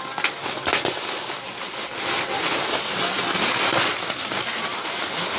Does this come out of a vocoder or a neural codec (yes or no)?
no